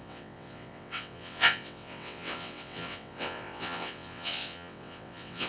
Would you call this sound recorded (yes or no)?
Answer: no